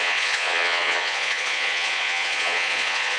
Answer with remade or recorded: remade